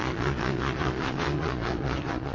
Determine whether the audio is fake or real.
fake